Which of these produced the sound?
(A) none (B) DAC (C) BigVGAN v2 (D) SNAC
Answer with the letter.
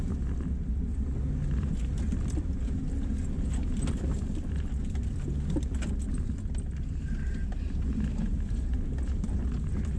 A